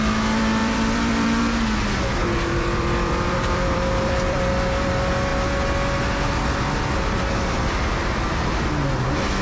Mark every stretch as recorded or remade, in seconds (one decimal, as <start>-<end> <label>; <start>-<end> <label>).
0.0-0.6 recorded; 0.6-1.4 remade; 1.4-2.2 recorded; 2.2-4.5 remade; 4.5-9.4 recorded